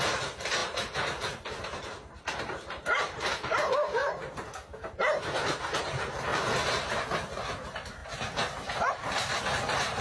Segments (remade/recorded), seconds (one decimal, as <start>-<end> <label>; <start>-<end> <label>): 0.0-4.0 remade; 4.0-5.6 recorded; 5.6-6.3 remade; 6.3-7.5 recorded; 7.5-8.0 remade; 8.0-8.9 recorded; 8.9-10.0 remade